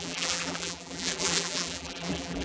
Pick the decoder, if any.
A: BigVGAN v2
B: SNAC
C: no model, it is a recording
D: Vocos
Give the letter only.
A